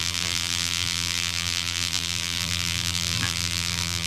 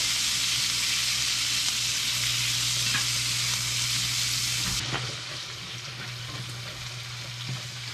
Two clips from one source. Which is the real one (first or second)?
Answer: second